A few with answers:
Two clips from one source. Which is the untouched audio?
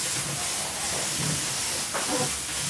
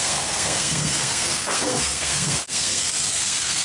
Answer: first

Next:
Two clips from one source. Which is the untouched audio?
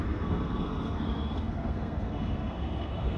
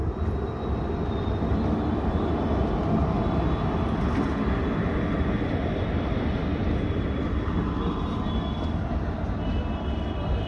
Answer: second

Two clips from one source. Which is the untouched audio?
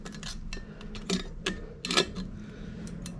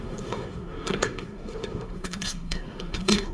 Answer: first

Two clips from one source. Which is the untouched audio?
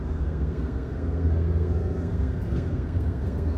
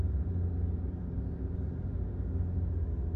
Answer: second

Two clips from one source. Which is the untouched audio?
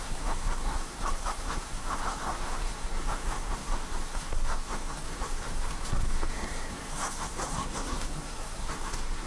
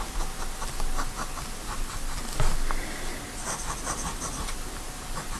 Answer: second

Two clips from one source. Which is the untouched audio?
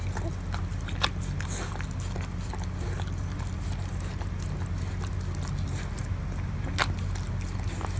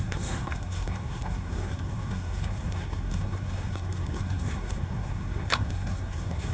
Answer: first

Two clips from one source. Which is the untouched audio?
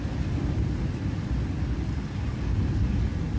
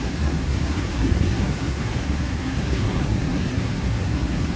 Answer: first